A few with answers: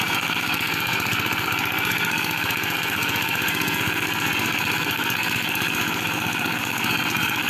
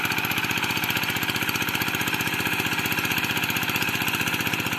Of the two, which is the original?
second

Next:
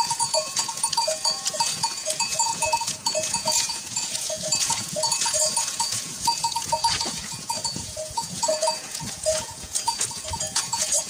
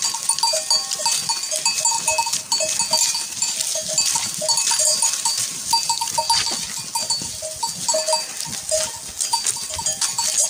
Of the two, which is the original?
second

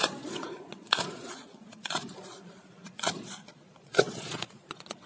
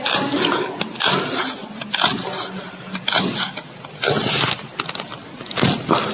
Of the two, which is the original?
second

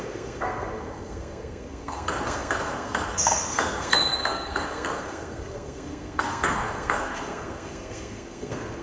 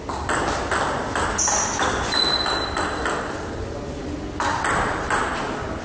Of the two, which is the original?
second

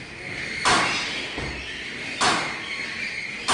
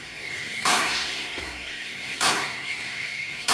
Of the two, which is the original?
first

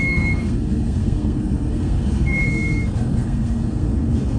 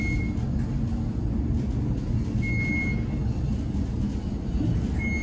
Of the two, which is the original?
second